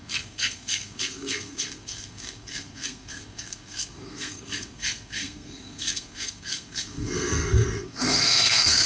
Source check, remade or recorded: remade